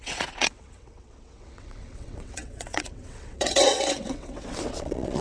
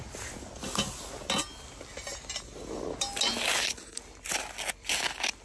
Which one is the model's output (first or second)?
first